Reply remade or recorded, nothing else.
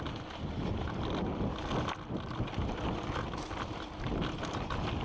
recorded